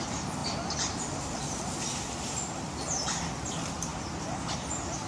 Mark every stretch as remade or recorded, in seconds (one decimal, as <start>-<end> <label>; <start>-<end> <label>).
0.0-3.9 remade; 3.9-5.1 recorded